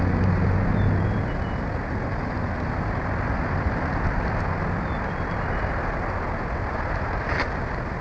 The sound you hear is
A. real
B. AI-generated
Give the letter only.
A